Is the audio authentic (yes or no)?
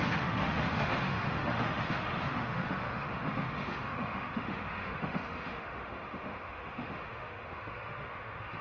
no